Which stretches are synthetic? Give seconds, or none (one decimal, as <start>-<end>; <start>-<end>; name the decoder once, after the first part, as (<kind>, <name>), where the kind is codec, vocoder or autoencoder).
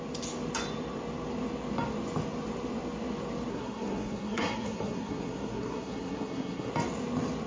3.5-6.7 (codec, SNAC)